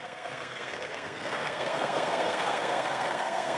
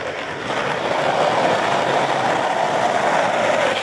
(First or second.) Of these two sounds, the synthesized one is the first